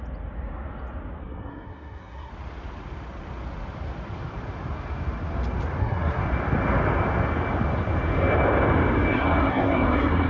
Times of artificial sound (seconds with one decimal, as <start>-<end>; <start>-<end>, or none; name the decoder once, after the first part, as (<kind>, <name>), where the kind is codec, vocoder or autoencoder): 1.2-2.3 (codec, SNAC); 5.8-6.2; 9.1-10.3

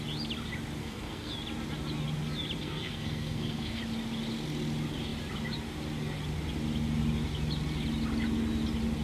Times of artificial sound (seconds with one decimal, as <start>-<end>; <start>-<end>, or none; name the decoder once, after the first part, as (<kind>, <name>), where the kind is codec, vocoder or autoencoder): 0.8-1.3 (codec, SNAC); 2.6-3.8

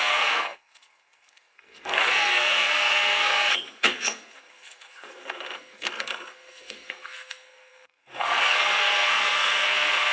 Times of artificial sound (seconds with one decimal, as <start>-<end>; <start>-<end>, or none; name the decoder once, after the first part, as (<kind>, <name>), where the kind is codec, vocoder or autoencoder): 0.0-10.1 (codec, SNAC)

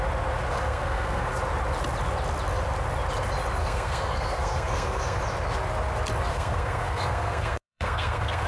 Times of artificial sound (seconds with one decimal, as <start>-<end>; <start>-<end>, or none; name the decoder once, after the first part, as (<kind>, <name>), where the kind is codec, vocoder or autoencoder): 0.5-1.3 (codec, SNAC); 3.6-5.2; 6.3-8.5

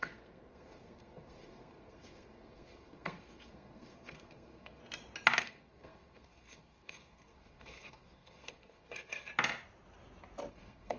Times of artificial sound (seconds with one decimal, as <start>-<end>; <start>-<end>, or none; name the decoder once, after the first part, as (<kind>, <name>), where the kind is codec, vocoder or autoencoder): 0.0-4.8 (codec, SNAC); 5.4-9.3; 10.5-11.0

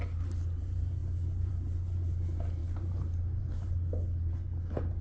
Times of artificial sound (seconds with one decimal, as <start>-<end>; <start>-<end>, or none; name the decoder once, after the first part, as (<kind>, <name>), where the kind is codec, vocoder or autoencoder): none